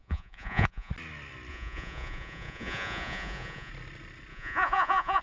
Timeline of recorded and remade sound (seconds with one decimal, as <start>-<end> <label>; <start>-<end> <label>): 0.0-0.9 remade; 0.9-1.5 recorded; 1.5-3.7 remade; 3.7-4.3 recorded; 4.3-5.2 remade

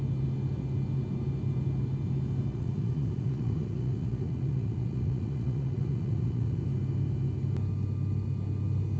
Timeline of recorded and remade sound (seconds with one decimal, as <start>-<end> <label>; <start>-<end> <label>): 0.0-2.5 recorded; 2.5-6.6 remade; 6.6-9.0 recorded

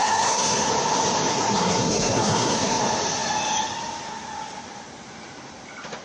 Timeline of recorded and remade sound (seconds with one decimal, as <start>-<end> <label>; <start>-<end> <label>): 0.0-0.7 remade; 0.7-1.3 recorded; 1.3-2.8 remade; 2.8-6.0 recorded